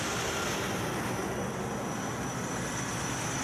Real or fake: real